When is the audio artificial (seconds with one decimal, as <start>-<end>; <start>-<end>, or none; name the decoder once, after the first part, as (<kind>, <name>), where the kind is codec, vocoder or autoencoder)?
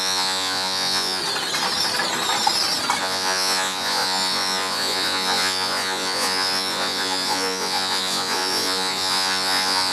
0.0-1.2 (vocoder, Vocos); 3.0-9.9